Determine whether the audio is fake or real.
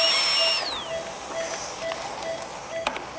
real